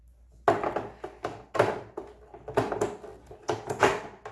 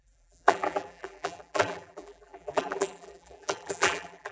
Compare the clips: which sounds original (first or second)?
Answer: first